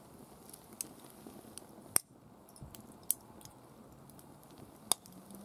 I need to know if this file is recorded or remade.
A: recorded